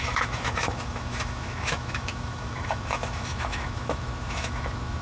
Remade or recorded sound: remade